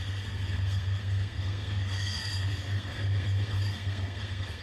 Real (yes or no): no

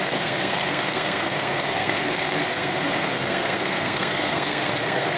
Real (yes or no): no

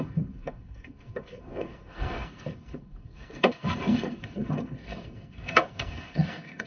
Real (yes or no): no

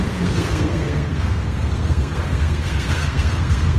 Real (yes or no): no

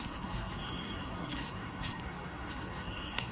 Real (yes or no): no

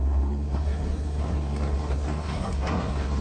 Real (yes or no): no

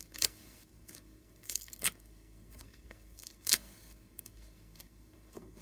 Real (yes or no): no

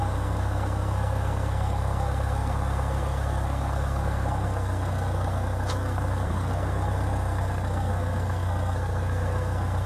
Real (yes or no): no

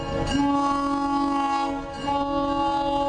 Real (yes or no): yes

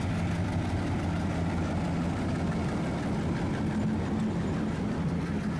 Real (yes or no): yes